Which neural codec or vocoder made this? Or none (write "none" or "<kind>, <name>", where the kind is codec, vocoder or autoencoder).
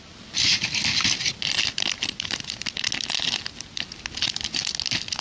none